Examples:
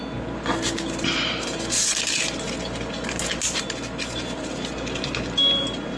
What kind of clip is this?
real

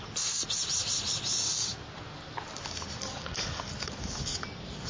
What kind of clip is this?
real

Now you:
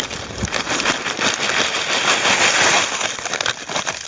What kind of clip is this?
real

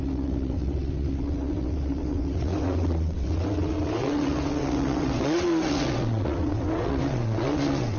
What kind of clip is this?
fake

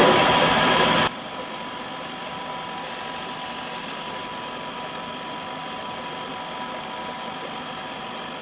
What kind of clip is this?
real